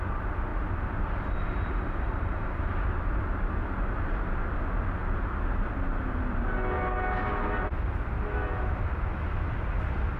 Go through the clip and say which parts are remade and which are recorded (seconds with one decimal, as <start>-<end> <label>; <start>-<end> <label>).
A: 0.0-0.5 recorded; 0.5-2.8 remade; 2.8-10.2 recorded